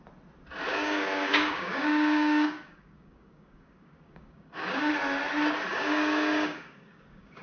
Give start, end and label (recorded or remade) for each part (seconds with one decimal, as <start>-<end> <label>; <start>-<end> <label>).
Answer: 0.0-0.7 recorded; 0.7-4.9 remade; 4.9-5.7 recorded; 5.7-7.4 remade